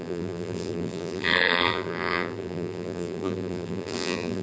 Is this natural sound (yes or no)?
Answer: no